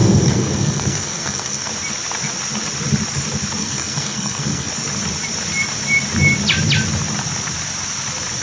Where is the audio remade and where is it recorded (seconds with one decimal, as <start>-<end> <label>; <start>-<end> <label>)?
0.0-1.7 remade; 1.7-3.6 recorded; 3.6-4.7 remade; 4.7-8.4 recorded